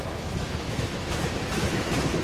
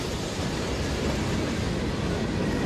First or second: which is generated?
first